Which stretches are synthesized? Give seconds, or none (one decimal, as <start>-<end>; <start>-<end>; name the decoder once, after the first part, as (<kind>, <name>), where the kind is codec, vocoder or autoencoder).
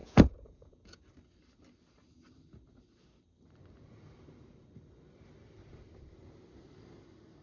0.0-1.0 (vocoder, Vocos)